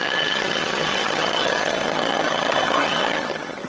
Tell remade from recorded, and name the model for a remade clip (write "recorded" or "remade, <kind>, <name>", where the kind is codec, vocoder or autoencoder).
remade, vocoder, HiFi-GAN